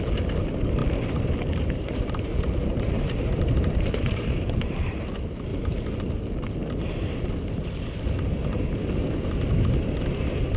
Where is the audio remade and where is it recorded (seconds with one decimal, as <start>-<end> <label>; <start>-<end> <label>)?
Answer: 0.0-0.8 recorded; 0.8-5.1 remade; 5.1-5.5 recorded; 5.5-6.1 remade; 6.1-6.6 recorded; 6.6-7.2 remade; 7.2-10.6 recorded

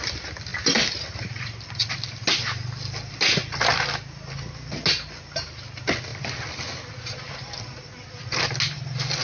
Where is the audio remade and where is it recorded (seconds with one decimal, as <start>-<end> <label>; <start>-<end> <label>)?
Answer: 0.0-9.2 recorded

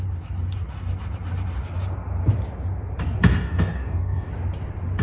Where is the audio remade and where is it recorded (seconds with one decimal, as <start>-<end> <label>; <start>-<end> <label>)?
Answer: 0.0-3.3 recorded; 3.3-4.3 remade; 4.3-5.0 recorded